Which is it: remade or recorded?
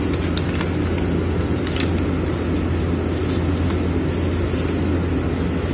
recorded